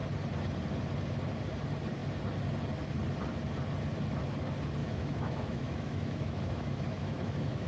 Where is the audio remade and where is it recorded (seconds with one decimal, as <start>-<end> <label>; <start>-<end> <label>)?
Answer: 0.0-4.8 recorded; 4.8-7.7 remade